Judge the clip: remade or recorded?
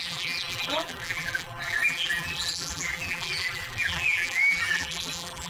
remade